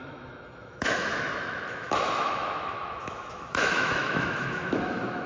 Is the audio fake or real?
fake